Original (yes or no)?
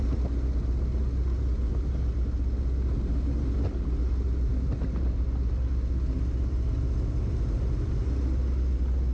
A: yes